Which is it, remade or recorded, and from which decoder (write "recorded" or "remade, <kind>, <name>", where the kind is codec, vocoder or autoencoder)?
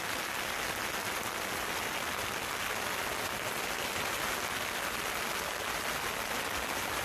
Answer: recorded